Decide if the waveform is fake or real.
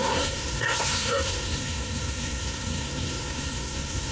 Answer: fake